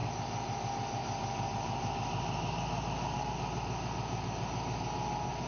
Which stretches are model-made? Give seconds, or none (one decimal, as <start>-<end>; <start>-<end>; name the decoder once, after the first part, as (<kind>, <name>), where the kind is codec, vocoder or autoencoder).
none